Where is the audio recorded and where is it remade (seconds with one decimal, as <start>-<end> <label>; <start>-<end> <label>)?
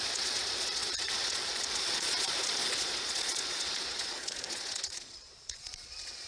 0.0-6.3 remade